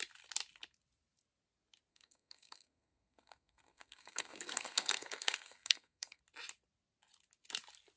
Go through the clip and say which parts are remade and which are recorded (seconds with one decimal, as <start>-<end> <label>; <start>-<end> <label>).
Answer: 0.0-1.9 recorded; 1.9-6.2 remade; 6.2-8.0 recorded